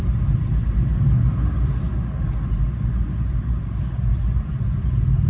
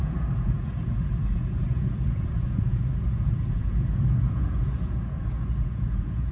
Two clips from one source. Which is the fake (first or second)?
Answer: second